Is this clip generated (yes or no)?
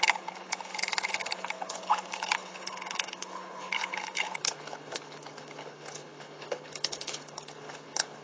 yes